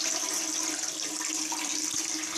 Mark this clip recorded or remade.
recorded